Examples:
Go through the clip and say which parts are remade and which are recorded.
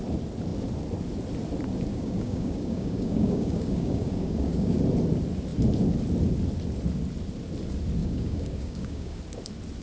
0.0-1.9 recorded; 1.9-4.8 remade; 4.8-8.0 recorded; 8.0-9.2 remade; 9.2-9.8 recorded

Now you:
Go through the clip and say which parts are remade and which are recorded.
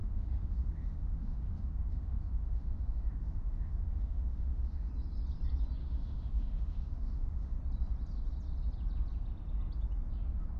0.0-4.9 remade; 4.9-5.8 recorded; 5.8-7.6 remade; 7.6-10.6 recorded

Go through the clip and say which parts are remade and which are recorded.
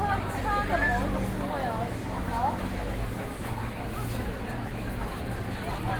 0.0-1.6 recorded; 1.6-5.2 remade; 5.2-6.0 recorded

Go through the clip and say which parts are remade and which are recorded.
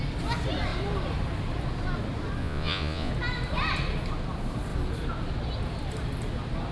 0.0-2.4 recorded; 2.4-3.1 remade; 3.1-6.7 recorded